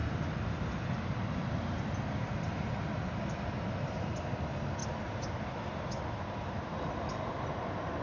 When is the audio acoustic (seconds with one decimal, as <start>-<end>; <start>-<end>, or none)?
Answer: 0.0-4.8; 7.1-8.0